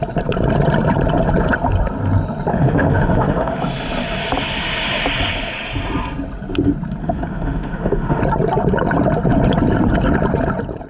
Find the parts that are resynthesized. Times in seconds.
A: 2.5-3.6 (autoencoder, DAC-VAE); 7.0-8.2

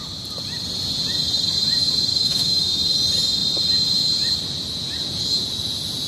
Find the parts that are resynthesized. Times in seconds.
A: 2.1-2.8 (autoencoder, DAC-VAE)

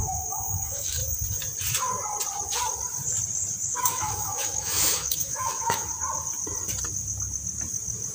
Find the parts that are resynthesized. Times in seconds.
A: 0.0-1.0 (autoencoder, DAC-VAE); 3.7-5.8

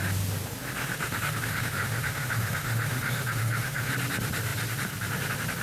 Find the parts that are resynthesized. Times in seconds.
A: 0.8-3.9 (autoencoder, DAC-VAE)

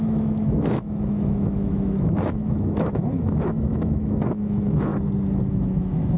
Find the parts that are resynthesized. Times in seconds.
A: 0.0-4.9 (autoencoder, DAC-VAE); 5.5-6.2